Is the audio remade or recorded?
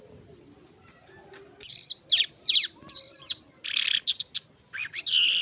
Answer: recorded